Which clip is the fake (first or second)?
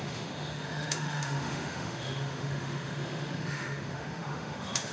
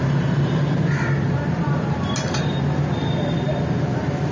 first